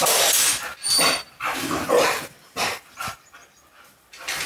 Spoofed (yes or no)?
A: yes